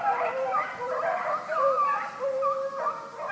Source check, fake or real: real